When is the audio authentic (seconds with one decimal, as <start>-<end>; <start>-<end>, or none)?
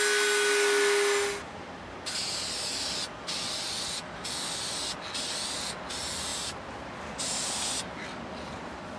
0.0-9.0